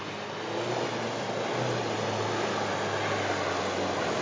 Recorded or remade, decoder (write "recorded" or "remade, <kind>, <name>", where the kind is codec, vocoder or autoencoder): recorded